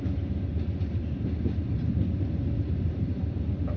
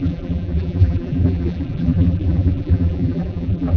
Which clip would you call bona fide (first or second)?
first